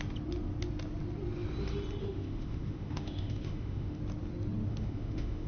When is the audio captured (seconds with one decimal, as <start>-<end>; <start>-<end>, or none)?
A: 0.0-2.0; 4.0-4.7